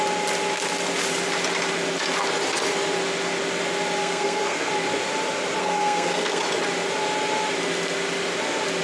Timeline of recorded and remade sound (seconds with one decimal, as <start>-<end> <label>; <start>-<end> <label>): 0.0-4.0 recorded; 4.0-4.7 remade; 4.7-5.6 recorded; 5.6-6.4 remade; 6.4-8.8 recorded